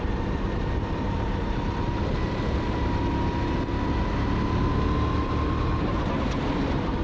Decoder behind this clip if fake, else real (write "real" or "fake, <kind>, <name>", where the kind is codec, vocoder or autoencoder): real